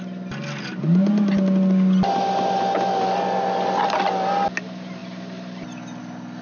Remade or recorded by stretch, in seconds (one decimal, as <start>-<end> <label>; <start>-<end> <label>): 0.0-6.4 recorded